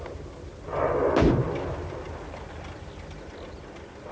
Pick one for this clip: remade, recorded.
recorded